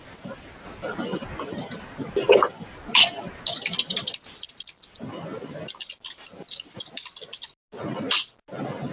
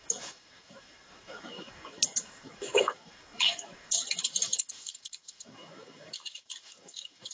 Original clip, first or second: first